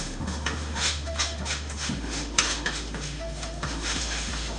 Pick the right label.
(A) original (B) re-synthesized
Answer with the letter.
B